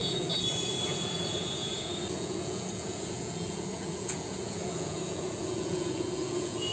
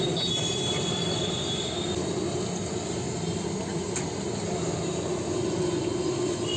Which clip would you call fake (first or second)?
first